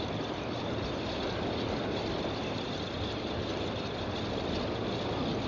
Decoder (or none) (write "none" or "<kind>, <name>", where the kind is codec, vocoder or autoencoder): none